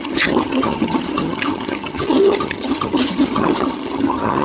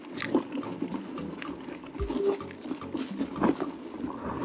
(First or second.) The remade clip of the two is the first